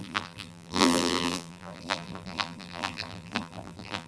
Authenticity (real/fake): fake